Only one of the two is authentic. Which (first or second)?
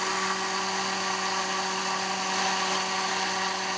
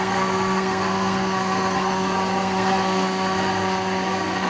first